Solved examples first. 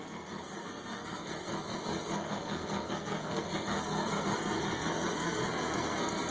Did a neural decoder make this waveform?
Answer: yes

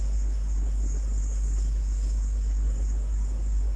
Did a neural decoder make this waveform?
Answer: yes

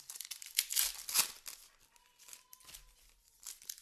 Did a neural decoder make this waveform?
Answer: no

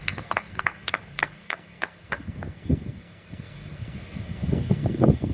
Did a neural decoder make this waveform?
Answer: yes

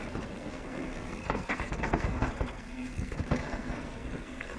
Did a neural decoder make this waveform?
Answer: yes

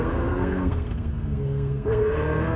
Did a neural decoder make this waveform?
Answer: yes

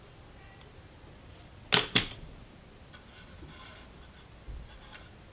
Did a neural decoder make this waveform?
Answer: no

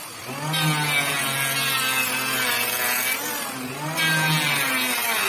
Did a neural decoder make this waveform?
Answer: no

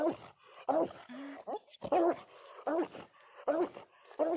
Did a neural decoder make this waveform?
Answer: no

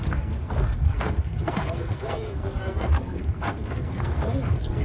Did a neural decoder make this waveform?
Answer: yes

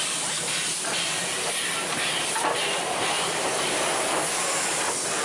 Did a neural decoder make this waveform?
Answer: no